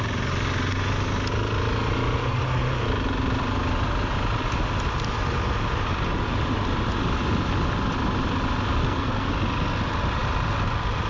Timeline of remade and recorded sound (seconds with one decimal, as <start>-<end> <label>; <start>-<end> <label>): 0.0-8.8 recorded; 8.8-9.3 remade; 9.3-11.1 recorded